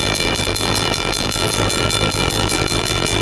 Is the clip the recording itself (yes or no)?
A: no